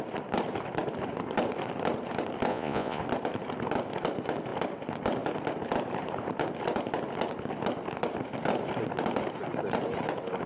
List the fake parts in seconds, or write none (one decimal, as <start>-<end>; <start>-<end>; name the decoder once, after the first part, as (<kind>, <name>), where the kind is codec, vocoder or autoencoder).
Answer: 2.5-3.0 (vocoder, Vocos)